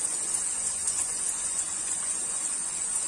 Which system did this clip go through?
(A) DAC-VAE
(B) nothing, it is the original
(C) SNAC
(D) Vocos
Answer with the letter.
D